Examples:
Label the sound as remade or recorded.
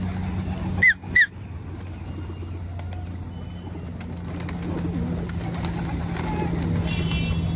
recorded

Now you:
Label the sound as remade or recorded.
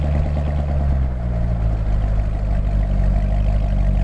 recorded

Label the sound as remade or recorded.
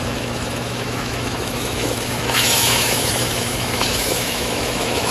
remade